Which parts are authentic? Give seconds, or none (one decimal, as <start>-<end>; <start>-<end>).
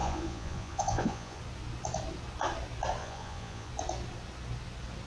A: 1.4-3.0; 3.7-5.1